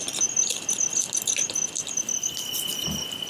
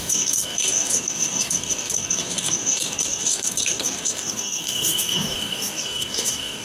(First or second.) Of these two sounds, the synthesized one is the second